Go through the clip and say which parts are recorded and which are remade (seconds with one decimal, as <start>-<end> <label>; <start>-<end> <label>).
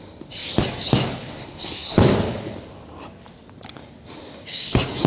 0.0-4.5 recorded; 4.5-5.1 remade